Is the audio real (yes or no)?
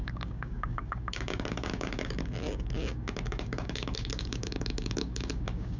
no